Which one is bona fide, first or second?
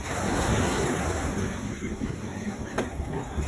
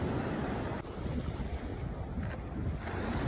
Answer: second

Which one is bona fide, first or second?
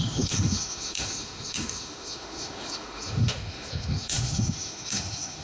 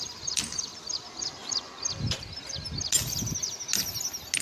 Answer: second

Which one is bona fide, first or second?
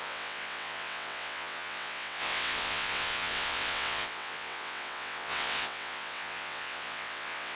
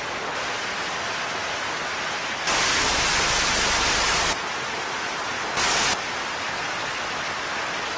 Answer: second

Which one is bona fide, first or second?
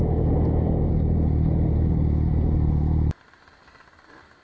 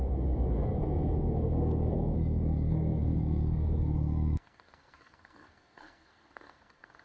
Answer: first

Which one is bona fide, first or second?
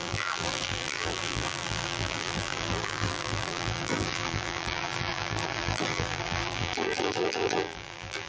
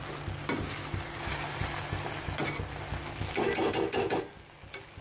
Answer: second